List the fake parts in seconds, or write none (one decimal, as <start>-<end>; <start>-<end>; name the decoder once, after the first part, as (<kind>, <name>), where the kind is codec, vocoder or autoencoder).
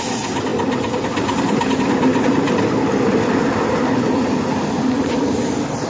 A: none